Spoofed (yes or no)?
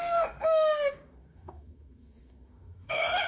yes